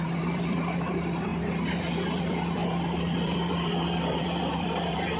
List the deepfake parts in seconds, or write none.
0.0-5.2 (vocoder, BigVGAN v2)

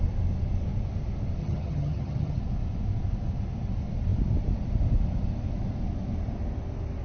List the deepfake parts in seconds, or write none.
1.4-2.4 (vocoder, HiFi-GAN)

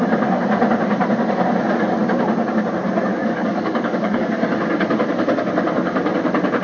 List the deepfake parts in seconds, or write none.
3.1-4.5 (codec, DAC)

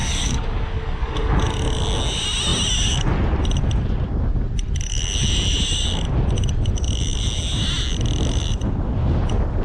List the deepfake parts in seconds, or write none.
0.0-1.4 (codec, DAC)

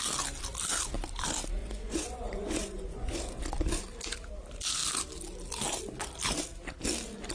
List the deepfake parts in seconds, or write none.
1.6-3.4 (vocoder, Vocos)

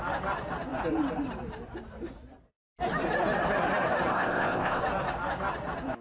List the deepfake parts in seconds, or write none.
4.1-4.8 (codec, ZipCodec)

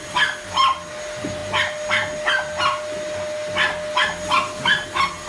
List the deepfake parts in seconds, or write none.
none

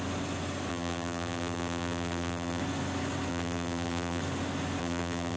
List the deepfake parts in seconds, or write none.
0.7-2.6 (vocoder, BigVGAN v2); 3.3-4.2; 4.8-5.4